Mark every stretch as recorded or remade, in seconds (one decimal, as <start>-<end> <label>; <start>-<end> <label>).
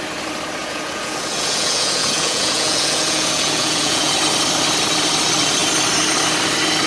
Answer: 0.0-0.6 recorded; 0.6-4.1 remade; 4.1-6.9 recorded